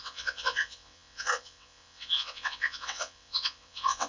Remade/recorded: remade